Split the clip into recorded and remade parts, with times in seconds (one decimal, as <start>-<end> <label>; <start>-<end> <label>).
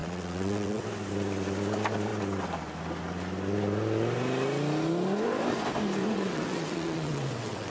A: 0.0-0.8 remade; 0.8-6.0 recorded; 6.0-7.7 remade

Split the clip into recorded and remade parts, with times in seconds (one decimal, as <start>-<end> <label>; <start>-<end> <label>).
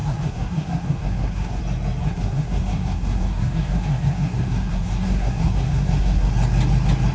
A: 0.0-1.6 remade; 1.6-2.0 recorded; 2.0-6.3 remade; 6.3-7.1 recorded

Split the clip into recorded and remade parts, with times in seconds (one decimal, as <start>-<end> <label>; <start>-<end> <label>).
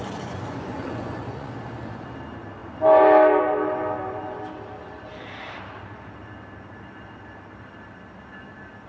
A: 0.0-1.5 remade; 1.5-8.9 recorded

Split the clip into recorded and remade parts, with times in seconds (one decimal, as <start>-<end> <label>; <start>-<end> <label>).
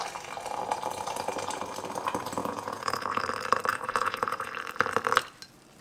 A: 0.0-2.4 recorded; 2.4-3.2 remade; 3.2-3.7 recorded; 3.7-4.5 remade; 4.5-5.8 recorded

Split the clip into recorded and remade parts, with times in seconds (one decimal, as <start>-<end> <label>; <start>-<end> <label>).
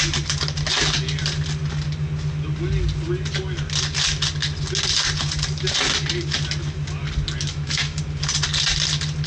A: 0.0-7.5 recorded; 7.5-8.0 remade; 8.0-9.3 recorded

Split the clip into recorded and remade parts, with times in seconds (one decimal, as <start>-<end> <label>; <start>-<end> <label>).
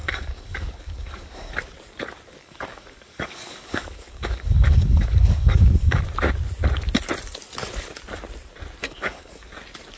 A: 0.0-1.5 remade; 1.5-2.4 recorded; 2.4-6.0 remade; 6.0-8.8 recorded; 8.8-9.5 remade; 9.5-10.0 recorded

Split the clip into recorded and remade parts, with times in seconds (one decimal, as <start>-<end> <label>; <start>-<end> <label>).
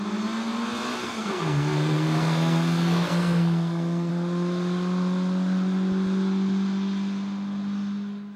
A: 0.0-1.0 recorded; 1.0-4.1 remade; 4.1-8.4 recorded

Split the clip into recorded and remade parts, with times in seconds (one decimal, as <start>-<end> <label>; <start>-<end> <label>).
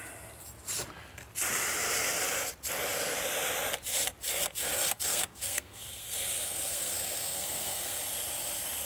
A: 0.0-4.3 recorded; 4.3-8.0 remade; 8.0-8.9 recorded